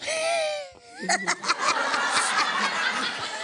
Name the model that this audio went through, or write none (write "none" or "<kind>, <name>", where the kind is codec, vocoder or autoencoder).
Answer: none